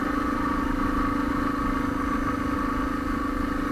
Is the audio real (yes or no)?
yes